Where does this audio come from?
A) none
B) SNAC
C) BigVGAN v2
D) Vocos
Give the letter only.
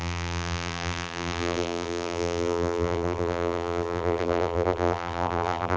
C